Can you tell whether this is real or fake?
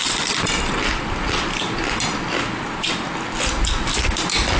real